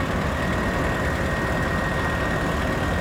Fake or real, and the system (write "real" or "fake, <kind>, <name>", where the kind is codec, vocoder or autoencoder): real